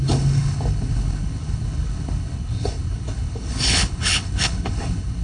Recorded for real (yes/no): no